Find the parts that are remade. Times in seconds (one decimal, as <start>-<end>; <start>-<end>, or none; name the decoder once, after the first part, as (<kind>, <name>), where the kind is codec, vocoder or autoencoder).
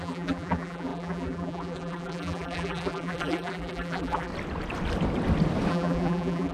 0.0-4.3 (vocoder, BigVGAN v2); 5.7-6.5